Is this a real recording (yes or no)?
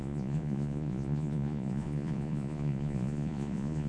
no